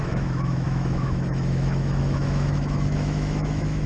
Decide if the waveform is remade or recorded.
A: remade